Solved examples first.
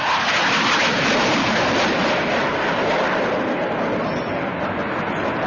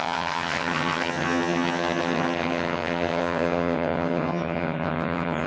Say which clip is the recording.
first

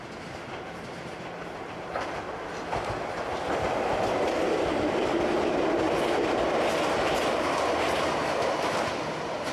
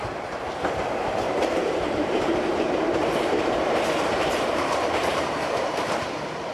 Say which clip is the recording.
first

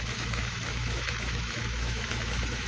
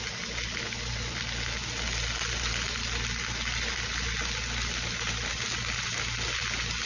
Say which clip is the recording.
second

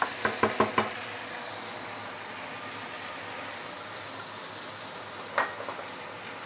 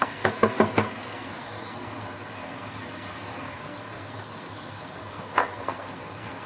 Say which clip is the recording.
first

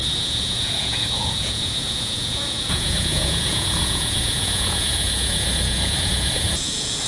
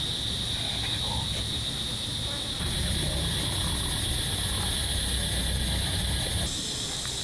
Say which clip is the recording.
second